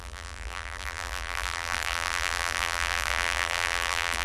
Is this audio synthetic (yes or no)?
yes